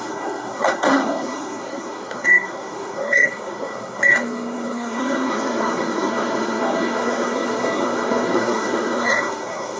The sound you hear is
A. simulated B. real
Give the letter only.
A